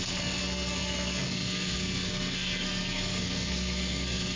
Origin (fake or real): fake